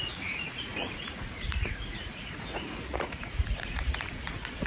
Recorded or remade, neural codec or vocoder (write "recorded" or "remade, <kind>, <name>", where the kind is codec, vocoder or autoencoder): remade, vocoder, Vocos